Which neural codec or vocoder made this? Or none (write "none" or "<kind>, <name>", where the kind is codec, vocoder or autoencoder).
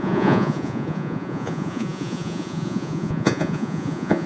vocoder, Vocos